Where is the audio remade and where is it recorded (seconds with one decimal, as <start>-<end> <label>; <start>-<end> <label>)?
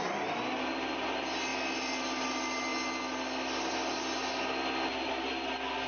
0.0-5.9 recorded